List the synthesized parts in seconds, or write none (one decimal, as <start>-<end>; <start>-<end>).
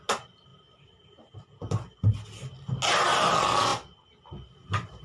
none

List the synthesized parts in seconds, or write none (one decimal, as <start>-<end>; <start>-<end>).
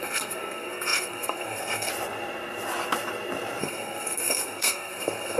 0.0-1.9; 3.6-5.4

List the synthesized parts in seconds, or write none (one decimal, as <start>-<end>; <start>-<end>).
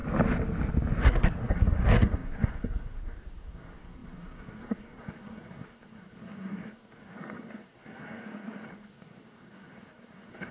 1.0-10.5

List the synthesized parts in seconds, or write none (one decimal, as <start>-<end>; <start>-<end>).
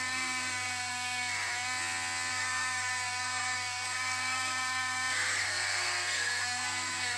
0.0-1.5; 2.3-7.2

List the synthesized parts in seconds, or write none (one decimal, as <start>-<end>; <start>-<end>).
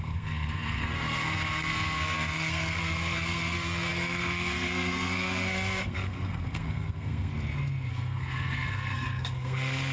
0.0-7.3; 7.9-9.9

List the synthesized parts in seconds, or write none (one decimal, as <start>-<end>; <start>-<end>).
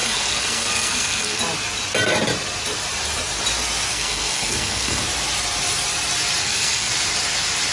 0.0-1.4; 3.9-5.0; 6.4-6.9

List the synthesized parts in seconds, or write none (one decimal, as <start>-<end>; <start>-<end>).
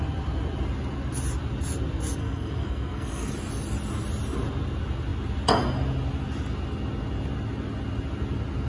2.2-3.3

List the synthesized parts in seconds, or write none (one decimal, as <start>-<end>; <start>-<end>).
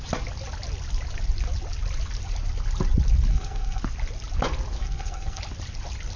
3.3-3.8; 4.8-5.4